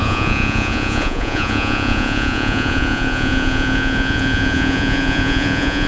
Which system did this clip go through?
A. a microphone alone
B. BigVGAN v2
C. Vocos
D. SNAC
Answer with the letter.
C